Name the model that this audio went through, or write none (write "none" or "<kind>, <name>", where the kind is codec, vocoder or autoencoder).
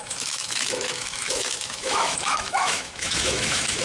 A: autoencoder, DAC-VAE